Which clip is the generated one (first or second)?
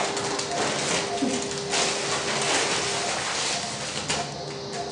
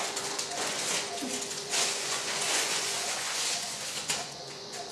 second